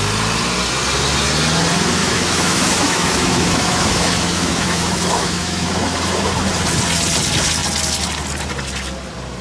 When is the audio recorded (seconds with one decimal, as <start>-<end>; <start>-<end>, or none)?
0.0-2.0; 5.7-9.4